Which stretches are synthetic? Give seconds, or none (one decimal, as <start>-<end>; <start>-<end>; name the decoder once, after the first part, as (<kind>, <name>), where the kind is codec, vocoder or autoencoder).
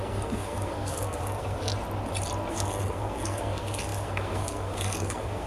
0.0-1.7 (codec, SNAC); 2.5-5.5